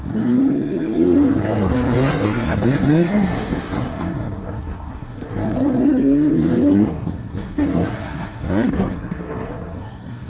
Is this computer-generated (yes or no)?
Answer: yes